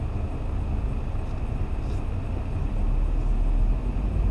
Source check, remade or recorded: recorded